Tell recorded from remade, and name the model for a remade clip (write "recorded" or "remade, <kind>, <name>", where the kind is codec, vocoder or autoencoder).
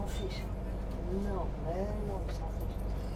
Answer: recorded